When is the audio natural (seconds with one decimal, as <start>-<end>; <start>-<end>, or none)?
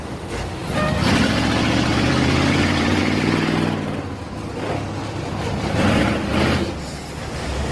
0.0-0.6; 1.3-1.9; 3.0-5.0; 6.0-7.7